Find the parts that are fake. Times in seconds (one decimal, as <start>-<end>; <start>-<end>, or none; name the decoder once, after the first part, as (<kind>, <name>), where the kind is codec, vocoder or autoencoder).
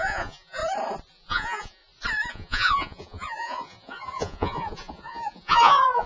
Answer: 0.0-0.6 (vocoder, Vocos); 1.1-1.8; 2.3-6.1